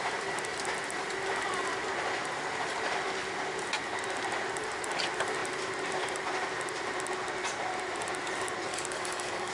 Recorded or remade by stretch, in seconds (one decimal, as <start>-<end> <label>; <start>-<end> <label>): 0.0-8.7 recorded; 8.7-9.5 remade